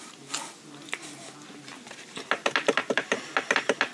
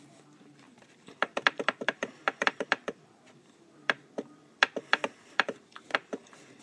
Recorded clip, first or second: first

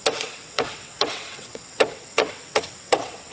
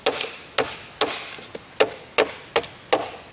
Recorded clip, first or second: second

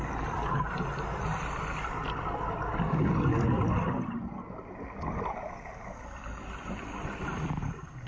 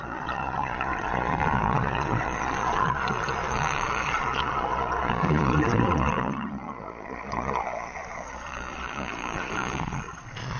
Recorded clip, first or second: first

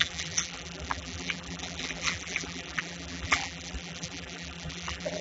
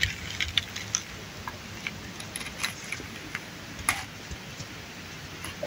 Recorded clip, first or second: second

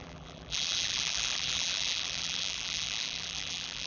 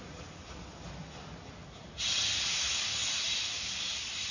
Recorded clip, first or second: second